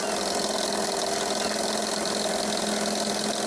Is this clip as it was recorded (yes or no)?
yes